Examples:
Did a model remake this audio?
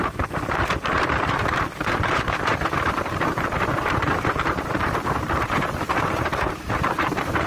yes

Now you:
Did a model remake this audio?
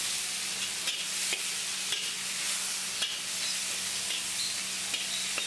no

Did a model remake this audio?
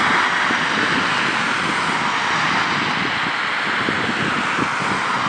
no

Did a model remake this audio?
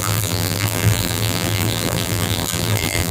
yes